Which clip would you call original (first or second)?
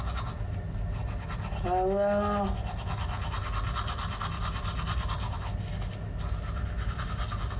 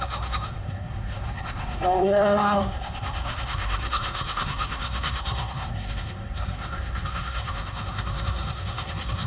first